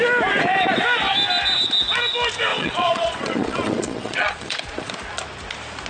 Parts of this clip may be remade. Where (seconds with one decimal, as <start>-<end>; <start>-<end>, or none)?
2.5-4.9